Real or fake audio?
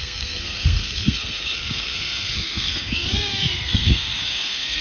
fake